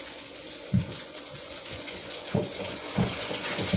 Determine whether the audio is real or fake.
fake